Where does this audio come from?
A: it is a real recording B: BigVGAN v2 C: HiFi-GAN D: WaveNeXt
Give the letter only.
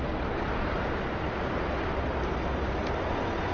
A